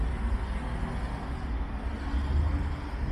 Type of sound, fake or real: real